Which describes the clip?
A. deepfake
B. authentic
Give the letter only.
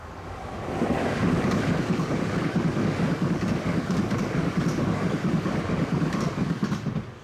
A